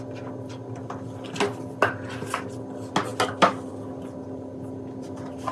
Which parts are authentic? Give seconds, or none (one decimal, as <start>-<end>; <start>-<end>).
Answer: 0.0-5.5